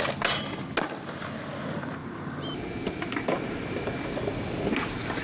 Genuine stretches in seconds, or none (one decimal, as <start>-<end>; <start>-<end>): 0.0-2.0; 3.9-5.2